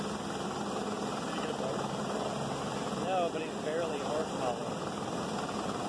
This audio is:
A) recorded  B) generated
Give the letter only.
A